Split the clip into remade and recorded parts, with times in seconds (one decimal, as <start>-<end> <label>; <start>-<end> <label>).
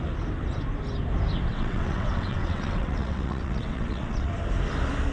0.0-1.5 recorded; 1.5-4.3 remade; 4.3-5.1 recorded